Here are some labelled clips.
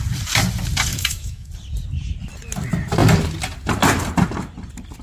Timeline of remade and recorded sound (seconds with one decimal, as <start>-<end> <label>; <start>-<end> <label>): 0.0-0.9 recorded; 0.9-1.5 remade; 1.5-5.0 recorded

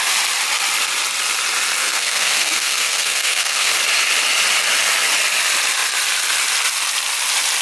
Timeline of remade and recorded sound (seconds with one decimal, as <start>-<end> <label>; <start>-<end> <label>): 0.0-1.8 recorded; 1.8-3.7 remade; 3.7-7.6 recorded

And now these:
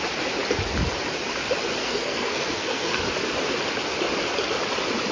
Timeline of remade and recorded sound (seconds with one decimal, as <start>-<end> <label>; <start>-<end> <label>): 0.0-1.8 recorded; 1.8-3.0 remade; 3.0-5.1 recorded

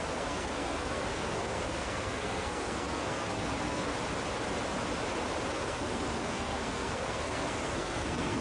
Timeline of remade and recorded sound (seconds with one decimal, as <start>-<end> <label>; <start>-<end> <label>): 0.0-3.9 remade; 3.9-5.5 recorded; 5.5-8.4 remade

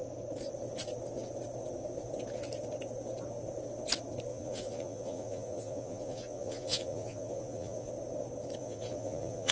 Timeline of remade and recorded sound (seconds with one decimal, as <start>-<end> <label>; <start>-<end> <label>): 0.0-4.3 recorded; 4.3-7.9 remade; 7.9-8.6 recorded; 8.6-9.5 remade